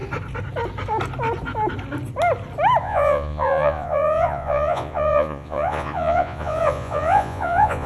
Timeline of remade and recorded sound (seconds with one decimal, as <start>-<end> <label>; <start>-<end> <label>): 0.0-2.8 recorded; 2.8-7.9 remade